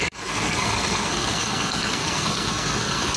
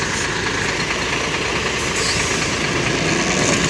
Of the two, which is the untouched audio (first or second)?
second